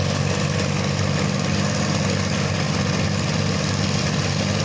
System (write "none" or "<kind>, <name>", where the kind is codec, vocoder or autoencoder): none